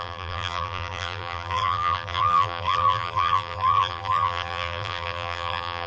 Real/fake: fake